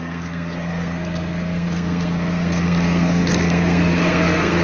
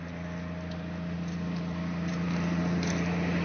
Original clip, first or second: second